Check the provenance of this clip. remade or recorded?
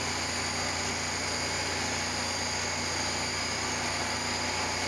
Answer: recorded